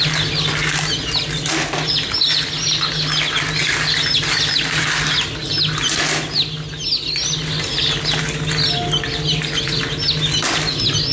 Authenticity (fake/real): real